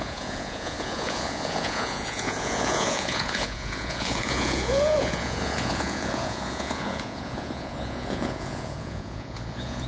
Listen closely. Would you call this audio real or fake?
fake